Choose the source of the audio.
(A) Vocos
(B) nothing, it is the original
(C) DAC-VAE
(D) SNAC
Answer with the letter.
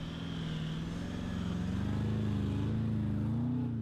B